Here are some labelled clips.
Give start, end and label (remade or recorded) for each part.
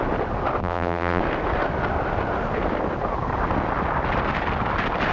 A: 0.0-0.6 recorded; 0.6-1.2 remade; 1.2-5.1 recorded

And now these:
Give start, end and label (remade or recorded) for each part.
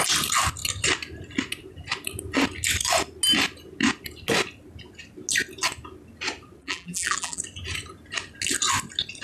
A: 0.0-6.6 recorded; 6.6-7.4 remade; 7.4-9.2 recorded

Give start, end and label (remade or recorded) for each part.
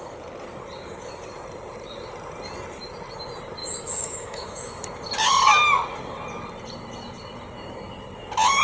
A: 0.0-3.6 recorded; 3.6-4.8 remade; 4.8-8.6 recorded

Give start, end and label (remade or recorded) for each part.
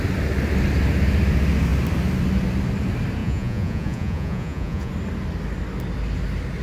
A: 0.0-3.2 recorded; 3.2-4.9 remade; 4.9-6.6 recorded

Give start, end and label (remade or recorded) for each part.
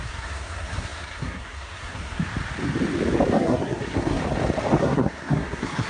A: 0.0-2.3 remade; 2.3-3.3 recorded; 3.3-4.2 remade; 4.2-4.8 recorded; 4.8-5.9 remade